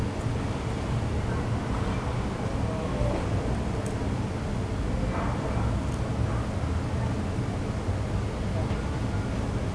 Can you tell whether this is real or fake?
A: real